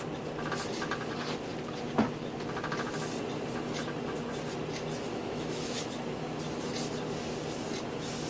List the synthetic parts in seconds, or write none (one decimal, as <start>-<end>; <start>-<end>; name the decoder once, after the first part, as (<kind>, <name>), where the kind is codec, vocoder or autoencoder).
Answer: 5.1-5.9 (autoencoder, DAC-VAE)